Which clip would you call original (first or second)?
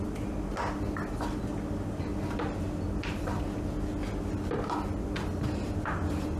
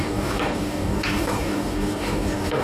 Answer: first